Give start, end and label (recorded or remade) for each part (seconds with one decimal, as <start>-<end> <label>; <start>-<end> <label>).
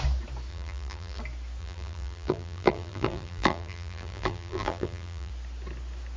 0.0-0.5 recorded; 0.5-1.2 remade; 1.2-1.6 recorded; 1.6-5.3 remade; 5.3-6.2 recorded